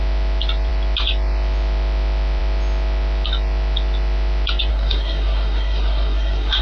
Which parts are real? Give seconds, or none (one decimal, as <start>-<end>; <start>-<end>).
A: 0.0-4.7